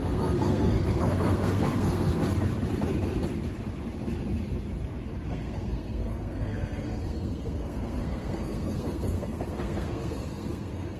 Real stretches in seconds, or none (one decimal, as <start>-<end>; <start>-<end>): 2.2-5.3